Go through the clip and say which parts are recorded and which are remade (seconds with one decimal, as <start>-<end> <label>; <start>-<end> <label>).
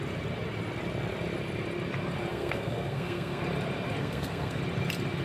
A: 0.0-2.3 recorded; 2.3-3.4 remade; 3.4-4.0 recorded; 4.0-4.6 remade; 4.6-5.2 recorded